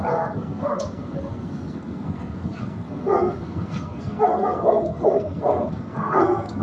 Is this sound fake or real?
fake